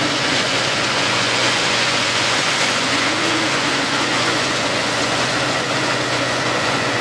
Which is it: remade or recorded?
remade